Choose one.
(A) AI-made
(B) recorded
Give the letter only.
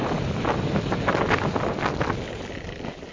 B